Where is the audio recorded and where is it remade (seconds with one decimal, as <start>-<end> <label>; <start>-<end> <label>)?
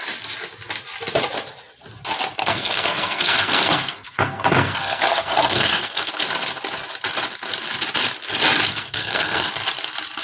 0.0-2.4 recorded; 2.4-6.1 remade; 6.1-8.7 recorded; 8.7-9.5 remade; 9.5-10.2 recorded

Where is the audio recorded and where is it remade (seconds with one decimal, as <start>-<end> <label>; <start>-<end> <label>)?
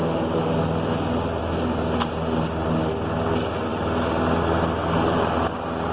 0.0-5.9 recorded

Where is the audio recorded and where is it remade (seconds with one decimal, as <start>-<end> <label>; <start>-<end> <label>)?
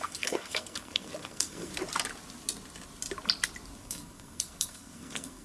0.0-1.7 remade; 1.7-3.8 recorded; 3.8-5.4 remade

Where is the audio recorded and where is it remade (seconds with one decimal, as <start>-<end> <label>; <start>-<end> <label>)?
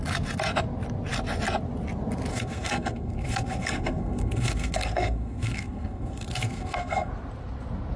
0.0-2.3 recorded; 2.3-7.1 remade; 7.1-8.0 recorded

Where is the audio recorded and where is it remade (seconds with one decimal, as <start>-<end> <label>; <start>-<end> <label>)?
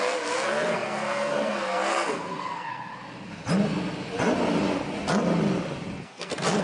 0.0-2.9 remade; 2.9-6.0 recorded; 6.0-6.6 remade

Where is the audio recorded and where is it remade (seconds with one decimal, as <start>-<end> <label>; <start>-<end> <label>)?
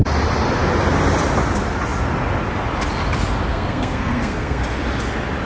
0.0-3.5 recorded; 3.5-4.6 remade; 4.6-5.5 recorded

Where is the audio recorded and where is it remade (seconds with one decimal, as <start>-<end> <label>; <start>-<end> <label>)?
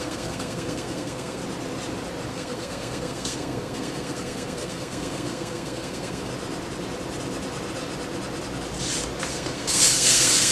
0.0-1.4 remade; 1.4-2.3 recorded; 2.3-6.3 remade; 6.3-9.3 recorded; 9.3-10.5 remade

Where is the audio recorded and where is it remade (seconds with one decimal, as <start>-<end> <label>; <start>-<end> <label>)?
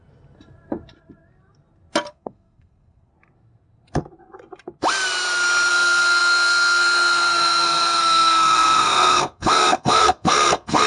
0.0-2.1 recorded; 2.1-3.1 remade; 3.1-5.7 recorded; 5.7-10.9 remade